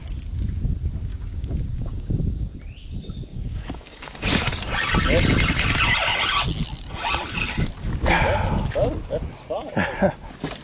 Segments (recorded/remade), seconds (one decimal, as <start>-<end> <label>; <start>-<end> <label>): 0.0-1.1 recorded; 1.1-2.6 remade; 2.6-3.3 recorded; 3.3-4.5 remade; 4.5-10.6 recorded